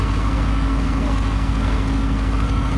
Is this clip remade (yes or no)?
yes